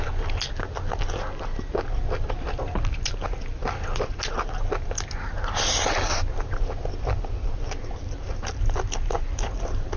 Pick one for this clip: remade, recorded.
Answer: recorded